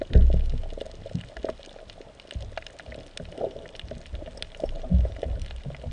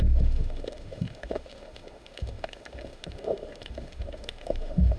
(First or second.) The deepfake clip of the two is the second